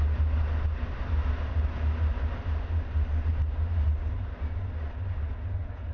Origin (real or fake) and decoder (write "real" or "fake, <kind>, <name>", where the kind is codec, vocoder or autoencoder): real